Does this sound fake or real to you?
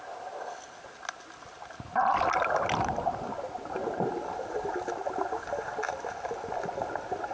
real